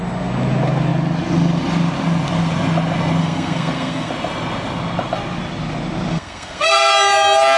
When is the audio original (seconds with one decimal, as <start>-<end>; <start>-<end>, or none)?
0.0-3.2; 4.1-6.1; 6.9-7.6